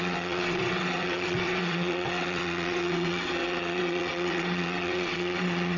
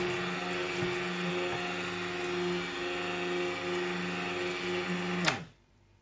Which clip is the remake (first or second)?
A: first